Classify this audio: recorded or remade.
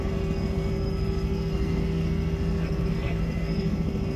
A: remade